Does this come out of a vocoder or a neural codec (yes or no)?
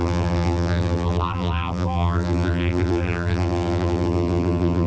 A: yes